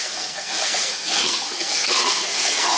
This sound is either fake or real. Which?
fake